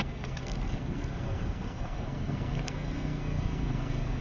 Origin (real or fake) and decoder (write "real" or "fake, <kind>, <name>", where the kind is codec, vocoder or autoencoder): fake, codec, SNAC